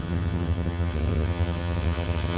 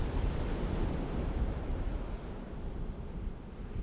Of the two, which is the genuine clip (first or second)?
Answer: second